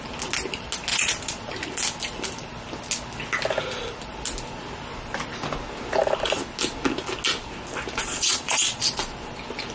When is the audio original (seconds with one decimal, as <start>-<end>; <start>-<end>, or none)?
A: 0.0-0.9; 1.5-8.0; 8.8-9.7